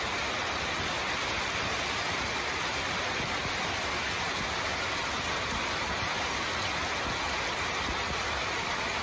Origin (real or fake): real